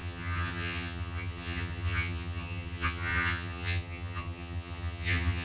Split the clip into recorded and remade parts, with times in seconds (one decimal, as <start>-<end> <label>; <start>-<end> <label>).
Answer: 0.0-5.4 remade